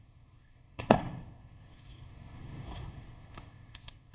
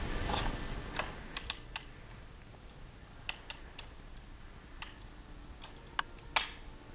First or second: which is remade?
first